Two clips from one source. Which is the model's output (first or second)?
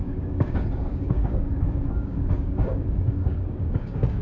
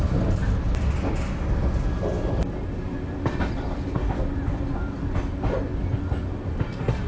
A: first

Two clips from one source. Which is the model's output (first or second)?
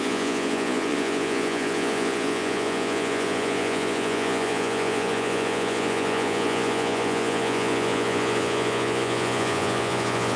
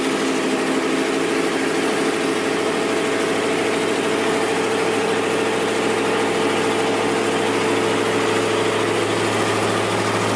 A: first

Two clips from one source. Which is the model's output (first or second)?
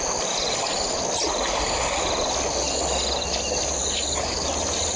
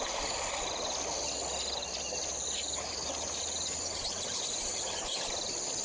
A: second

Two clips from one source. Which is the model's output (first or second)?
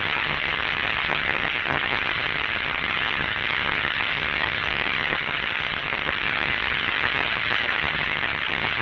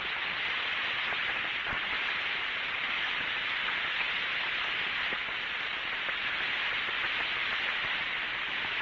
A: first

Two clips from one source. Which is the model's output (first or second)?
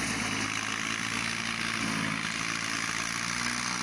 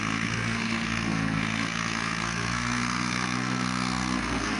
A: second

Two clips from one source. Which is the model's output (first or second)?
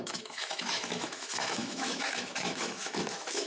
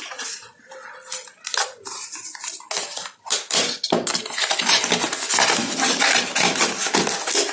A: first